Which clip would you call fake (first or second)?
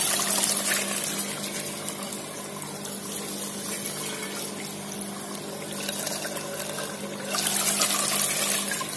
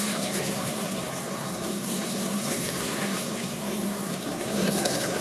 second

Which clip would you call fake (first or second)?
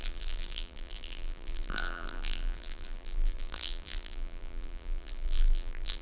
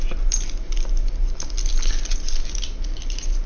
first